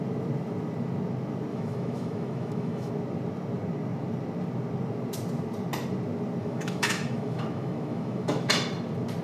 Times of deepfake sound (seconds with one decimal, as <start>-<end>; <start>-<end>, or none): 1.5-2.9; 6.4-8.5